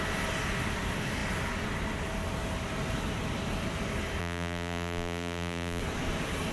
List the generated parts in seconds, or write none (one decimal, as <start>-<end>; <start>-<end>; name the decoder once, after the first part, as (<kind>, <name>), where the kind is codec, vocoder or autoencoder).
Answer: 4.2-5.8 (vocoder, BigVGAN v2)